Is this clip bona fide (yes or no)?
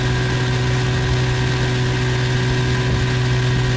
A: yes